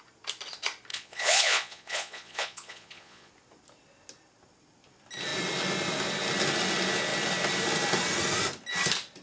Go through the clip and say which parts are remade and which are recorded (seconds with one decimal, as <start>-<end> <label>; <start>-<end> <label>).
0.0-0.9 recorded; 0.9-3.3 remade; 3.3-9.2 recorded